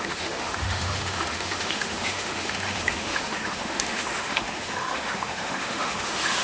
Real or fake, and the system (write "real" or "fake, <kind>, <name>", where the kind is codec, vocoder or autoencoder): fake, autoencoder, DAC-VAE